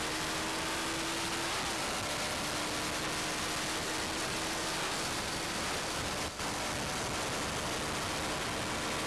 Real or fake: real